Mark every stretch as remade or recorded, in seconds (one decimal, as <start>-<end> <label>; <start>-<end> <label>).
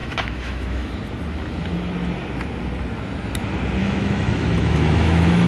0.0-0.9 remade; 0.9-3.8 recorded; 3.8-5.5 remade